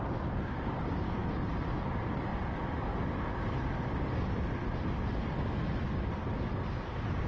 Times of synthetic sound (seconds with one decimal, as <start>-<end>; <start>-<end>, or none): none